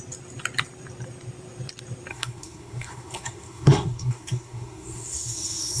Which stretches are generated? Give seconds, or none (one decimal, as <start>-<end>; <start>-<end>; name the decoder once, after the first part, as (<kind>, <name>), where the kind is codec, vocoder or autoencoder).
2.1-5.8 (codec, SNAC)